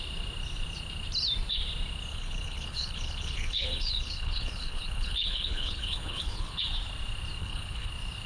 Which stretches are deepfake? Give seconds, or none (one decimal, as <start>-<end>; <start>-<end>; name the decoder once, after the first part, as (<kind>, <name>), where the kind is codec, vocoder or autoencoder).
2.1-6.6 (codec, HILCodec); 7.4-7.9